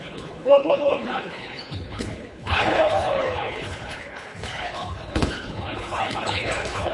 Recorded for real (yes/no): no